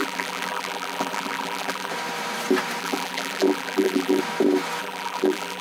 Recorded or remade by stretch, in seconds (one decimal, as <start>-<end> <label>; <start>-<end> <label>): 0.0-1.9 remade; 1.9-2.8 recorded; 2.8-4.2 remade; 4.2-4.8 recorded; 4.8-5.6 remade